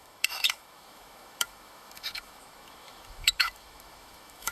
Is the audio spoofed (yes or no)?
yes